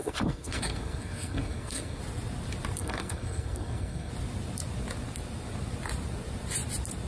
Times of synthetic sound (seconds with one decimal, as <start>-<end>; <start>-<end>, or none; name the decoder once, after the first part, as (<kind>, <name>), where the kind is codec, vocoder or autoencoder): 0.0-2.0 (codec, SNAC); 2.8-4.1